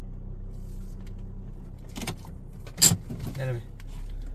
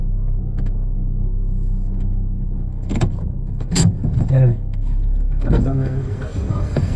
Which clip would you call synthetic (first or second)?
second